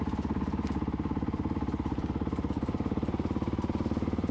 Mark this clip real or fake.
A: real